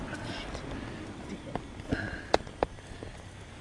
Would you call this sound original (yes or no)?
yes